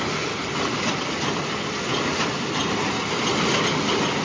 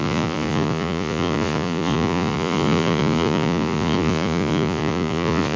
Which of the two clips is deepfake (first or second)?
second